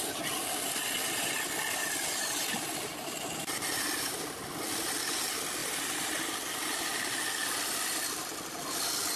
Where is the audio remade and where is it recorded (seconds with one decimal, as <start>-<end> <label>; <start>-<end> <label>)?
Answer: 0.0-5.6 recorded; 5.6-6.3 remade; 6.3-9.2 recorded